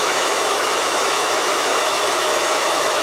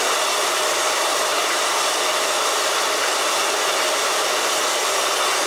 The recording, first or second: second